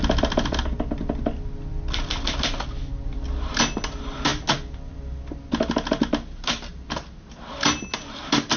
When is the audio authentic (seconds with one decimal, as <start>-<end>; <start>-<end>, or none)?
0.0-8.6